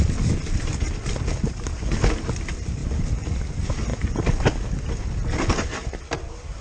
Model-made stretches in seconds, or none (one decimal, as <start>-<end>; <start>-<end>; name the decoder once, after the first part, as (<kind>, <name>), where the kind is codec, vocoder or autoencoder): 2.8-3.5 (vocoder, BigVGAN v2)